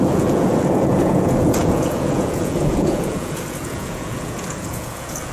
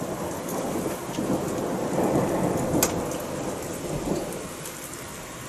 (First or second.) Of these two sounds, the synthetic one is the first